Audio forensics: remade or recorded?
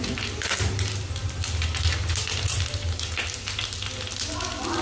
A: recorded